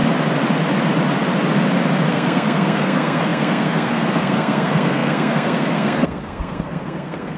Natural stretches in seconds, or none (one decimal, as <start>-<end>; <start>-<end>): 0.0-2.1